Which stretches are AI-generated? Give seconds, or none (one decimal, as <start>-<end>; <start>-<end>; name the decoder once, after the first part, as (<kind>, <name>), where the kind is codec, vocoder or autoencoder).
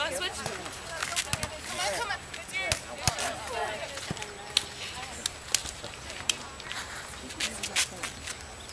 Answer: 5.6-7.3 (vocoder, BigVGAN v2)